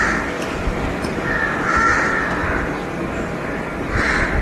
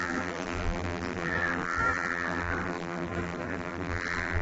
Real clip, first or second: first